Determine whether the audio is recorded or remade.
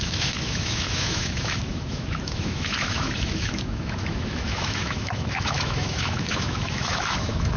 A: remade